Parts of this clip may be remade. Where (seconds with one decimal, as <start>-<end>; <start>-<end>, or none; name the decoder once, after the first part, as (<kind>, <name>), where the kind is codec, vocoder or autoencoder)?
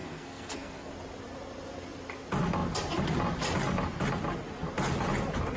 0.0-0.9 (codec, SNAC)